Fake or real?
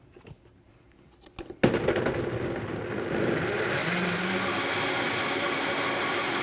real